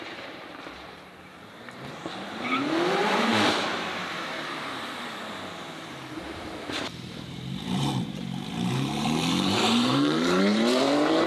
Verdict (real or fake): fake